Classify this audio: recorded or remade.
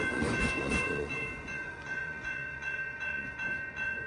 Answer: remade